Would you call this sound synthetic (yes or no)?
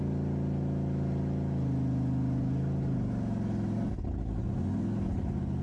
no